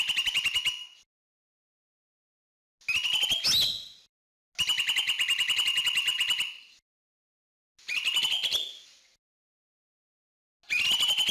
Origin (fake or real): real